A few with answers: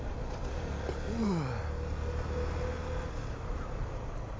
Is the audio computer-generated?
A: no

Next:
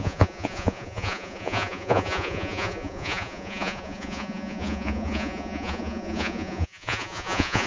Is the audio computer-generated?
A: yes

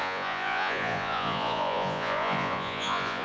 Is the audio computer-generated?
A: yes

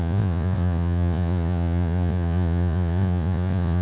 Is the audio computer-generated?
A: yes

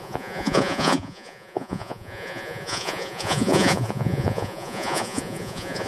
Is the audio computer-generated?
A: yes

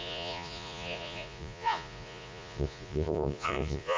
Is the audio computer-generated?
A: yes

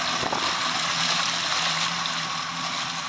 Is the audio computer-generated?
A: no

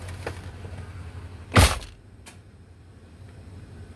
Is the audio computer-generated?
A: no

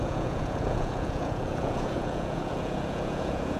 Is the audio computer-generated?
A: yes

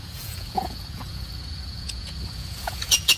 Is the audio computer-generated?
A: yes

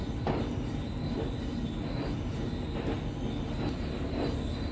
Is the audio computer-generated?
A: no